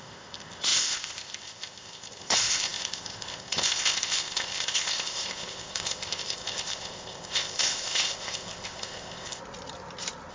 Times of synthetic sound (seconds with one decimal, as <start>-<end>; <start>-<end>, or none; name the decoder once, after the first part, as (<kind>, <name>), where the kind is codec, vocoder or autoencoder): 0.0-9.4 (codec, ZipCodec)